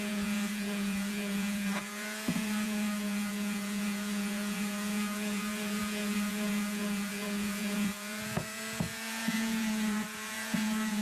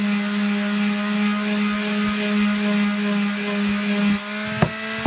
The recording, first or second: second